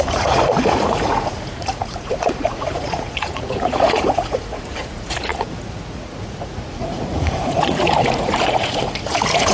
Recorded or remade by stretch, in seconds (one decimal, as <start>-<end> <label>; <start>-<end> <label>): 0.0-9.5 remade